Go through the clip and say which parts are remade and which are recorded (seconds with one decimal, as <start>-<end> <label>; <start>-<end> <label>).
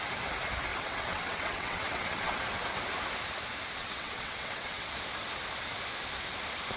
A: 0.0-0.7 recorded; 0.7-2.4 remade; 2.4-3.8 recorded; 3.8-4.9 remade; 4.9-6.8 recorded